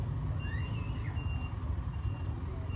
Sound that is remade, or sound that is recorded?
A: recorded